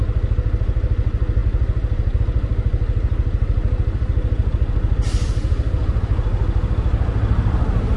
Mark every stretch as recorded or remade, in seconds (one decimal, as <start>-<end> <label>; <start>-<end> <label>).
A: 0.0-8.0 recorded